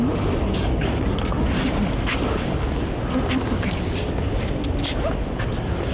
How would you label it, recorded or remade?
recorded